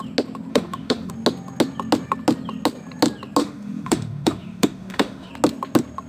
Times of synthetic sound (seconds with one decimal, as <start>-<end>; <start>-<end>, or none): 0.5-1.1; 3.4-5.3

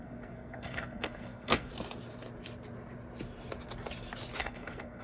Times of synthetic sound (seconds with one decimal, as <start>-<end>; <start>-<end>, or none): 0.0-1.7; 4.4-5.0

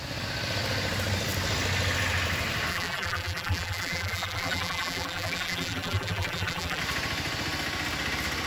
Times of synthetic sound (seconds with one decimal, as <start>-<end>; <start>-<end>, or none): 2.7-6.8

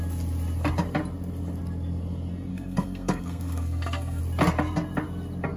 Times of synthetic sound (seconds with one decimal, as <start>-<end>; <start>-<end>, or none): 2.5-4.2

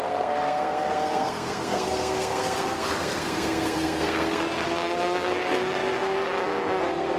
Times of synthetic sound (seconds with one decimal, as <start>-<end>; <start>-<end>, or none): 0.0-7.2

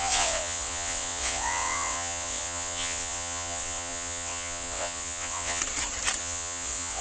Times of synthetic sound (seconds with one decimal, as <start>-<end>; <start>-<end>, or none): 0.0-5.6; 6.2-7.0

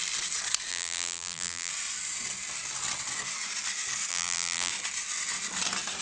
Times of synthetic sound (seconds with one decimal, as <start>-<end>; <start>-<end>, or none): 0.7-1.7; 4.1-4.7

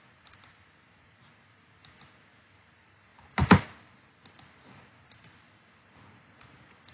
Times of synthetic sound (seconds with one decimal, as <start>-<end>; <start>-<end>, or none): 0.0-3.1; 4.7-6.9